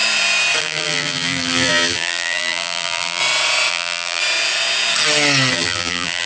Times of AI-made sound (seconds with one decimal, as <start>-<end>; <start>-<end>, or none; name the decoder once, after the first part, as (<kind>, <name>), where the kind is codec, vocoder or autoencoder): 0.6-3.2 (vocoder, BigVGAN v2); 3.7-4.2; 5.5-6.3